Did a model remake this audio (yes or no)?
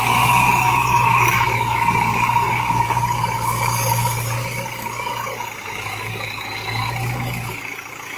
yes